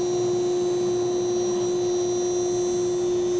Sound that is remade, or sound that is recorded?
recorded